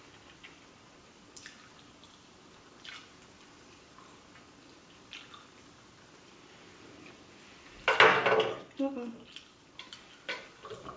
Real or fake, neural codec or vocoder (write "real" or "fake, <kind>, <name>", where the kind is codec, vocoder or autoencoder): real